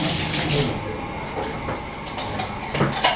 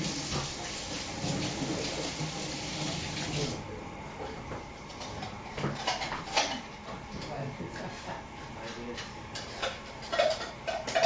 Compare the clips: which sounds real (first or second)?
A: first